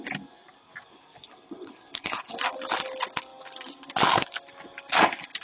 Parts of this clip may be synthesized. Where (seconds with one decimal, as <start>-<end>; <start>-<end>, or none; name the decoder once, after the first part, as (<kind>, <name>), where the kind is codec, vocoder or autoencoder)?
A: 1.2-2.2 (codec, HILCodec)